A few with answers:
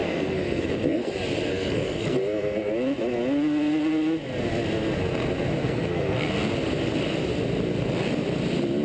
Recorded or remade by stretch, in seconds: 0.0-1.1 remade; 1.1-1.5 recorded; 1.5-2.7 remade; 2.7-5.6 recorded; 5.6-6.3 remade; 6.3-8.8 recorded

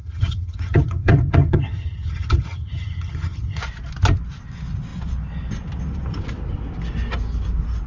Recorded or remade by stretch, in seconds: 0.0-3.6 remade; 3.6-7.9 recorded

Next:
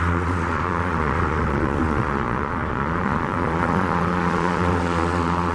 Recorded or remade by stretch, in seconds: 0.0-5.5 remade

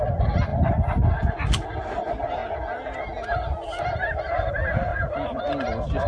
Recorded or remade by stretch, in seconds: 0.0-4.9 recorded; 4.9-5.4 remade; 5.4-6.1 recorded

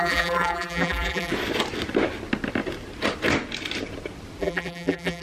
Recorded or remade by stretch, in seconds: 0.0-1.3 remade; 1.3-4.4 recorded; 4.4-5.2 remade

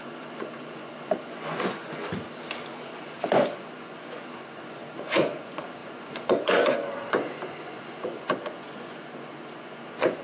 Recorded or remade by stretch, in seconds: 0.0-2.1 remade; 2.1-2.7 recorded; 2.7-10.2 remade

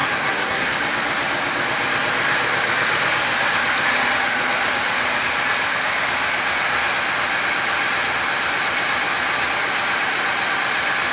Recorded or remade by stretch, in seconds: 0.0-0.7 remade; 0.7-11.1 recorded